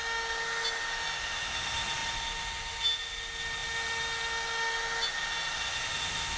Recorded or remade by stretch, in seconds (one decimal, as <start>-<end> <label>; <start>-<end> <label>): 0.0-6.4 recorded